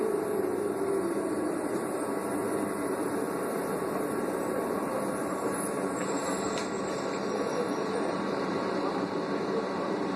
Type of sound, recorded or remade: remade